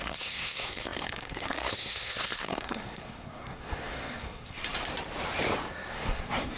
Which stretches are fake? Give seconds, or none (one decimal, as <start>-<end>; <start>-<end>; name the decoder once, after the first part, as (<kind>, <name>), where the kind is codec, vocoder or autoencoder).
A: 0.0-4.6 (codec, SNAC); 5.9-6.6